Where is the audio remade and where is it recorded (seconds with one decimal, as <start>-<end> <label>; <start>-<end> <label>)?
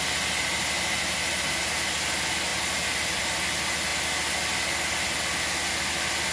0.0-6.3 recorded